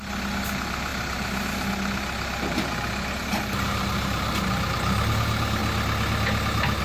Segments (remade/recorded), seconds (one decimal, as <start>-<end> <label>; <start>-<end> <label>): 0.0-5.6 remade; 5.6-6.8 recorded